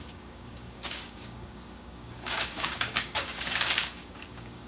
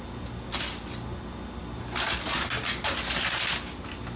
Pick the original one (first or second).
second